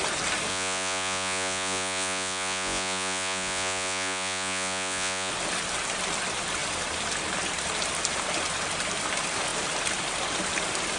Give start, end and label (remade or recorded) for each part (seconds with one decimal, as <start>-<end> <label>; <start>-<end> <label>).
0.0-0.5 recorded; 0.5-5.3 remade; 5.3-11.0 recorded

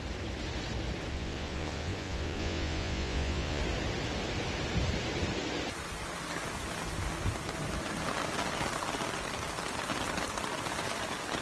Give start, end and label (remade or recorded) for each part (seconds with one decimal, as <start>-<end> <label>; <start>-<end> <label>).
0.0-1.1 recorded; 1.1-3.6 remade; 3.6-11.4 recorded

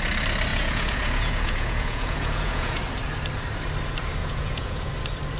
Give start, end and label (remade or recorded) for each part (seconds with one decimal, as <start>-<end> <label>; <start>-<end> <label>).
0.0-0.5 recorded; 0.5-2.8 remade; 2.8-4.2 recorded; 4.2-4.9 remade; 4.9-5.4 recorded

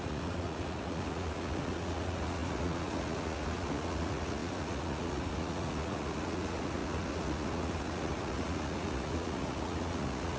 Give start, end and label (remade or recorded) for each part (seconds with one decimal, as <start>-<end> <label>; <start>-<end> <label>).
0.0-10.4 remade

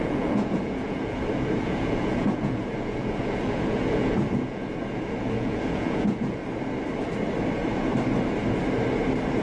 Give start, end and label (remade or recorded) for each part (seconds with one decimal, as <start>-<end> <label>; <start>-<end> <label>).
0.0-6.4 remade; 6.4-7.5 recorded; 7.5-7.9 remade; 7.9-9.4 recorded